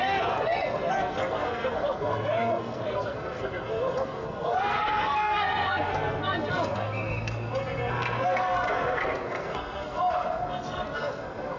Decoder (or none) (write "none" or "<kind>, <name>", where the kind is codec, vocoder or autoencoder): codec, SNAC